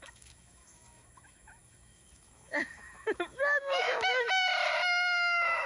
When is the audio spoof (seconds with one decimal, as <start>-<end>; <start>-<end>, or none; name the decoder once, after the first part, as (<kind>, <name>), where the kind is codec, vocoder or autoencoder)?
0.0-5.7 (autoencoder, DAC-VAE)